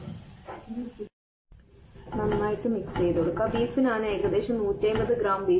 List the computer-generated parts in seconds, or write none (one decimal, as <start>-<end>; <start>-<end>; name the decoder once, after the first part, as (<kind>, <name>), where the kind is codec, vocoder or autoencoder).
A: none